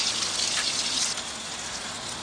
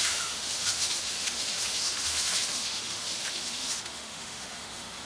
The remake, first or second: second